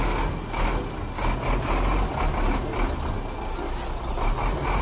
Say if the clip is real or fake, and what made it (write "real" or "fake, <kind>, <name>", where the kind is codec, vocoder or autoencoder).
real